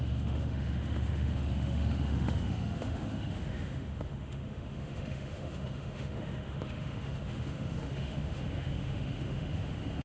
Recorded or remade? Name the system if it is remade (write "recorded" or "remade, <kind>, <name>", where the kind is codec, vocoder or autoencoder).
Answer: remade, autoencoder, DAC-VAE